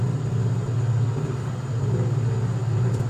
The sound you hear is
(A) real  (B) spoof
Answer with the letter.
A